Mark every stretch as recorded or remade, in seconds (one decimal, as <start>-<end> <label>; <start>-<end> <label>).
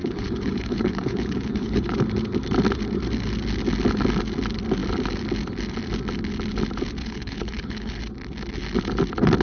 0.0-1.9 remade; 1.9-7.0 recorded; 7.0-8.0 remade; 8.0-9.4 recorded